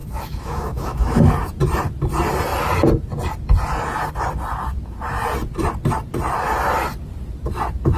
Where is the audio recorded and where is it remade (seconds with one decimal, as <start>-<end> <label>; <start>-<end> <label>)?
0.0-1.3 remade; 1.3-8.0 recorded